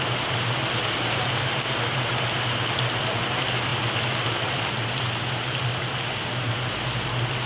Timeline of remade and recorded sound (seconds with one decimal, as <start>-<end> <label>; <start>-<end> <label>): 0.0-7.5 recorded